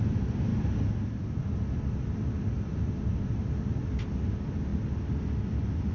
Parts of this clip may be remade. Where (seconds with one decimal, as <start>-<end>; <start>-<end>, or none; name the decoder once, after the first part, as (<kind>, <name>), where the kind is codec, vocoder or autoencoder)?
none